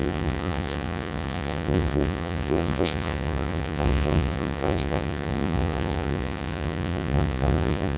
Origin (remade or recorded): remade